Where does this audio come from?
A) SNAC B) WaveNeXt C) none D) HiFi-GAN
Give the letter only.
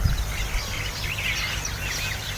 C